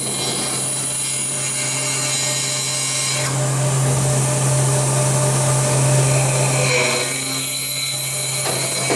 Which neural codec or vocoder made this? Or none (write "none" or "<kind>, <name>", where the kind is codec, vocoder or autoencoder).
none